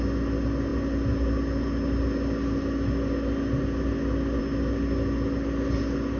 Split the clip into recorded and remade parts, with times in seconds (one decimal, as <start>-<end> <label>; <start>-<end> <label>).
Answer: 0.0-6.2 recorded